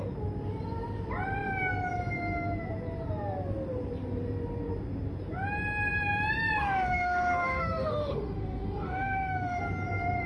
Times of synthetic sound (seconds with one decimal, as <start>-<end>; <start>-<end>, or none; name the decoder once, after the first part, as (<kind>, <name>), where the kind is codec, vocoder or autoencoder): 6.6-9.6 (autoencoder, DAC-VAE)